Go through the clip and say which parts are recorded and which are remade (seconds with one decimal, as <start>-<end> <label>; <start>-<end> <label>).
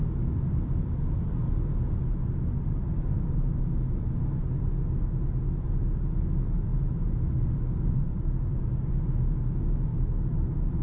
0.0-9.9 recorded; 9.9-10.8 remade